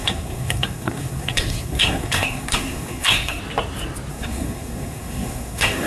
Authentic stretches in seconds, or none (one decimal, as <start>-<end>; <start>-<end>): 3.4-4.1